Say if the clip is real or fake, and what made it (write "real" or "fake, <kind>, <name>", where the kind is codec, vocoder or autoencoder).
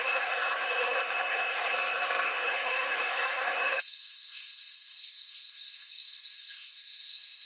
fake, codec, SNAC